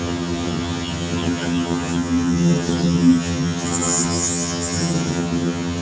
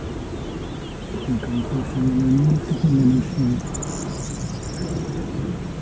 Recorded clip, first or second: second